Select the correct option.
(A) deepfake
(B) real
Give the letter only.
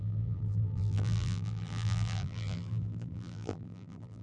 A